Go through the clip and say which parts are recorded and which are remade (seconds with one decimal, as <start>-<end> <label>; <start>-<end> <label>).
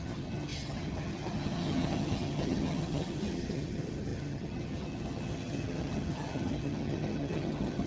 0.0-7.9 remade